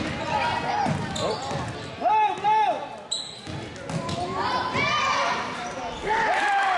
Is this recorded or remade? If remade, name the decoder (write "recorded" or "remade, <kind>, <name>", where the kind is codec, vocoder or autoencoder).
recorded